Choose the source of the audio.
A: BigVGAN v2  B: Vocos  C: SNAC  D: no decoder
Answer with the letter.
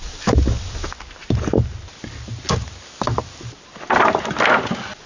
D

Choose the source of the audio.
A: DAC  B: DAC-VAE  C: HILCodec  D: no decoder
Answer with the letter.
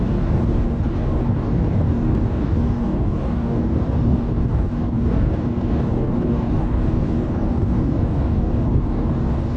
A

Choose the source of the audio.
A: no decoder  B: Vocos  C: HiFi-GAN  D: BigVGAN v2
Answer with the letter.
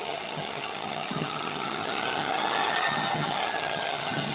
C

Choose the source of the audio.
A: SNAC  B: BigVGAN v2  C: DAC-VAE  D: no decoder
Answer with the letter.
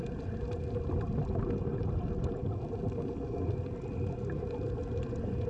D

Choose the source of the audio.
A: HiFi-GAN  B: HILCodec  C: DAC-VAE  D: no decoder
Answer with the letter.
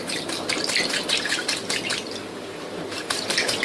D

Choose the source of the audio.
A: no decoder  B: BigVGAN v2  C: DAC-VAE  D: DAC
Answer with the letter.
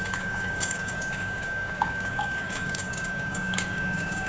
D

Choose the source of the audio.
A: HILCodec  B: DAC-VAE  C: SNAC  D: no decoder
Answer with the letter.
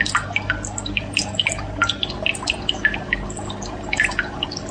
D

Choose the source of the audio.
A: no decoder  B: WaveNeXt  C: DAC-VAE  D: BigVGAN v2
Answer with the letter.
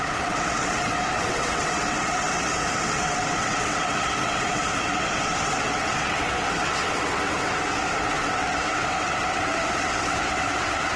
B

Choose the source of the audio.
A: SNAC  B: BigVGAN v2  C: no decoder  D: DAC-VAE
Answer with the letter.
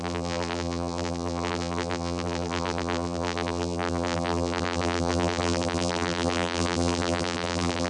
B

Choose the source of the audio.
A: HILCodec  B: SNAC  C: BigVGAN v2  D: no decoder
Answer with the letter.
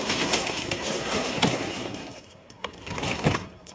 B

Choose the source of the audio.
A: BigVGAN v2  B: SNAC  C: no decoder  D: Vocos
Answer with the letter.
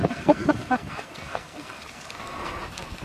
B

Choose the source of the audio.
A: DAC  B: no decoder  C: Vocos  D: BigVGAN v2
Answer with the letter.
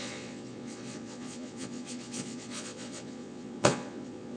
C